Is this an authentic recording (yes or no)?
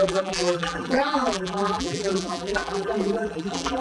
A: no